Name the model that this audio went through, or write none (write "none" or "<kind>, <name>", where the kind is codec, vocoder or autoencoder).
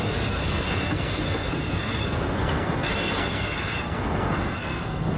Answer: codec, SNAC